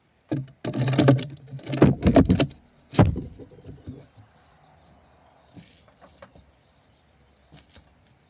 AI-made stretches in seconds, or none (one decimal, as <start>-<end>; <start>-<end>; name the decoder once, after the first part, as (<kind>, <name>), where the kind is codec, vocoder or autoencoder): none